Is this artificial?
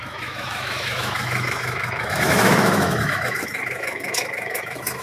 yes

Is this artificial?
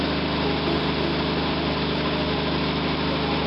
no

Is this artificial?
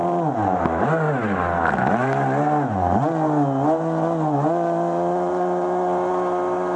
no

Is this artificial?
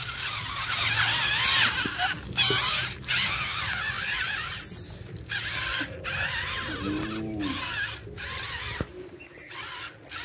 no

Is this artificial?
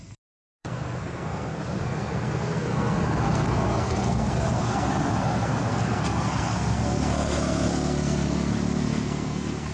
yes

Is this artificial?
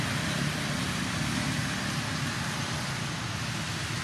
no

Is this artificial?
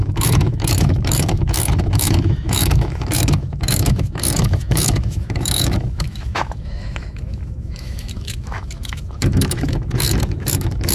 yes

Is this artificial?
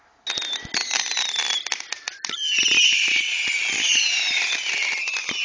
no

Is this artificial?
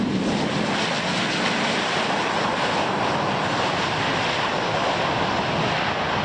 no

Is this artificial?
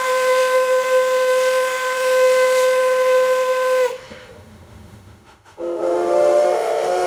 yes